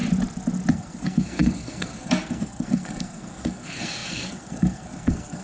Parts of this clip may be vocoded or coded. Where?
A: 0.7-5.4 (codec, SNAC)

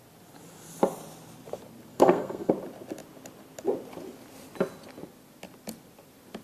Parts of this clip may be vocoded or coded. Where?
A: 1.9-2.5 (codec, SNAC)

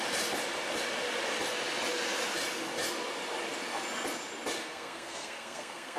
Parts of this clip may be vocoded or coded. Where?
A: 4.6-6.0 (codec, SNAC)